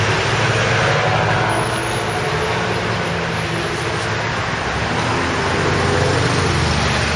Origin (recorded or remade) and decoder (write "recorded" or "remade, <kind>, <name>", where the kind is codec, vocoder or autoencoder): recorded